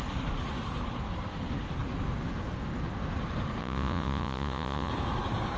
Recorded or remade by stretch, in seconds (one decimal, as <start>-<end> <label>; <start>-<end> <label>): 0.0-3.6 recorded; 3.6-4.9 remade; 4.9-5.6 recorded